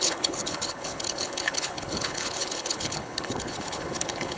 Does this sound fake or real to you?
fake